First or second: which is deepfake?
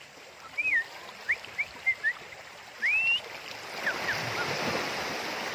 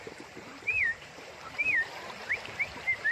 second